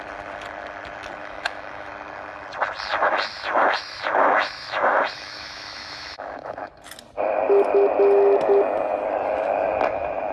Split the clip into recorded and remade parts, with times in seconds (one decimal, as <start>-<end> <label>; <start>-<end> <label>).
0.0-1.2 recorded; 1.2-1.9 remade; 1.9-2.9 recorded; 2.9-6.7 remade; 6.7-10.3 recorded